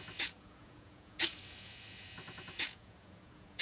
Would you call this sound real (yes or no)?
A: no